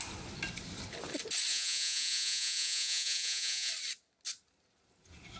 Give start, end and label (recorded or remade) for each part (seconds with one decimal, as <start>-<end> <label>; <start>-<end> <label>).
0.0-1.5 recorded; 1.5-3.7 remade; 3.7-5.4 recorded